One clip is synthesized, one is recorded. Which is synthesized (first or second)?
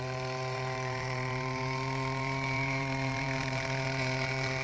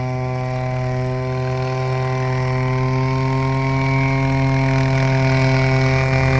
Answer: first